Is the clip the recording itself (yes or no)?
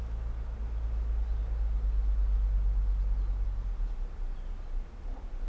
yes